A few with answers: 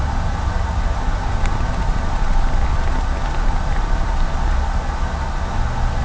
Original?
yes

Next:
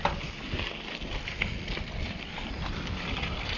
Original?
yes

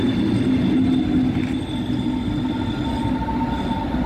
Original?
yes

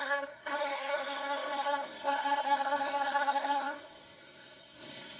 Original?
no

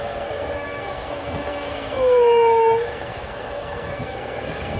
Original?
no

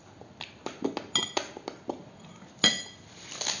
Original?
yes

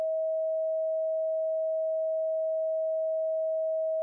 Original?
yes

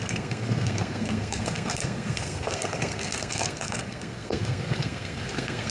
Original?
no